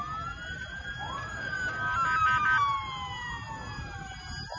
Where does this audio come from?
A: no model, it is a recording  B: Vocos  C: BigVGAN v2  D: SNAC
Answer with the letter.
A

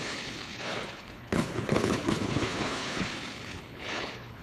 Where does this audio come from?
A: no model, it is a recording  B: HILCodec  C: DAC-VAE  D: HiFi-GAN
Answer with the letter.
B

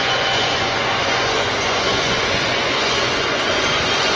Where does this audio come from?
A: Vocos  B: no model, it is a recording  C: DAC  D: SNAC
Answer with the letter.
A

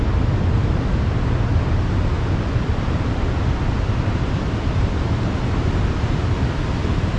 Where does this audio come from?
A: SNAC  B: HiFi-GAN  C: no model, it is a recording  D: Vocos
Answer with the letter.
C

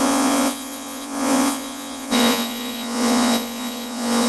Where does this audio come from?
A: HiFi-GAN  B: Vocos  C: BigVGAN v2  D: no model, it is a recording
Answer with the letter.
B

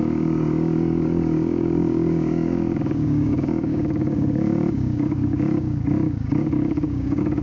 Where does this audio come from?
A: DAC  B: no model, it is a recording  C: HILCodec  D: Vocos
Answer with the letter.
A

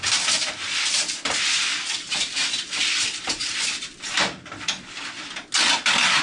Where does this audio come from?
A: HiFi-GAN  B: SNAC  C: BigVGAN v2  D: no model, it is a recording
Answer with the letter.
D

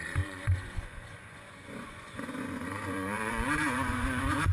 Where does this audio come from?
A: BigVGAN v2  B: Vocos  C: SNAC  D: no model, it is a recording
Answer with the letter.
B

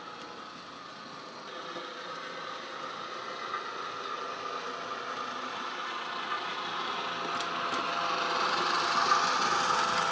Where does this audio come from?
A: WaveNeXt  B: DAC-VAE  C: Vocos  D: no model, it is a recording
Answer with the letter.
D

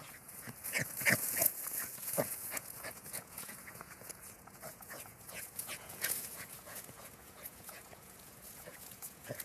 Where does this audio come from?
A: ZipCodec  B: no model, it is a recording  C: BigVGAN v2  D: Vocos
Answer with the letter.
D